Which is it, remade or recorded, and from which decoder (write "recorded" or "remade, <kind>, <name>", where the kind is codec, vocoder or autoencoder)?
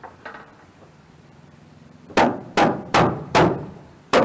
remade, vocoder, BigVGAN v2